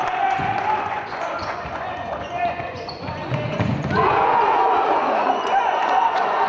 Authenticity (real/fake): fake